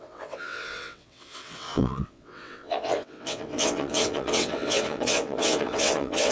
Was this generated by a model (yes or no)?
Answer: yes